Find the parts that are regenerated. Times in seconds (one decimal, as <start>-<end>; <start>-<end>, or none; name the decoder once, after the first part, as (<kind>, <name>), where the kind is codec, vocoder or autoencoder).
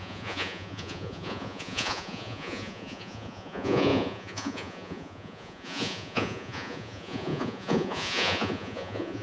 0.0-9.2 (vocoder, Vocos)